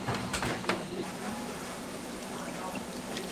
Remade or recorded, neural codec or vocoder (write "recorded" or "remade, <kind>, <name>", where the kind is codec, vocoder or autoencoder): remade, vocoder, BigVGAN v2